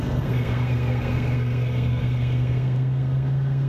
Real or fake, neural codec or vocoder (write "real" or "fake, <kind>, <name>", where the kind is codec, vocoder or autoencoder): fake, codec, SNAC